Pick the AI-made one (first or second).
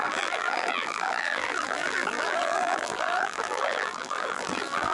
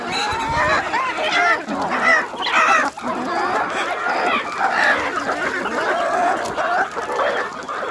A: first